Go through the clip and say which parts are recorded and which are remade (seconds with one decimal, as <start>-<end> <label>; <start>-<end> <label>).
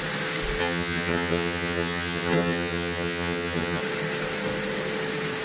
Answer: 0.0-0.6 recorded; 0.6-3.8 remade; 3.8-5.4 recorded